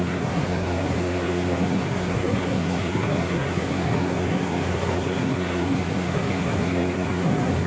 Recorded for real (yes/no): no